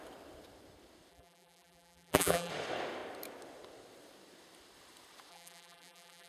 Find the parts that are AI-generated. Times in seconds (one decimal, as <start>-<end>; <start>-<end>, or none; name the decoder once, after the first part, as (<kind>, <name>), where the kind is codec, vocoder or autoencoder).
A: 1.1-2.5 (vocoder, BigVGAN v2); 5.3-6.3